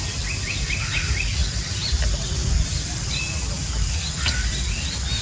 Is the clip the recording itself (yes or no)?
yes